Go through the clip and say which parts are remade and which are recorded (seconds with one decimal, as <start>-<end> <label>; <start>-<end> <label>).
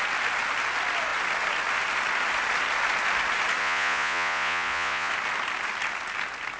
0.0-3.6 recorded; 3.6-5.1 remade; 5.1-6.6 recorded